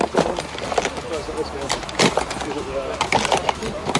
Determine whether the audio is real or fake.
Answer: real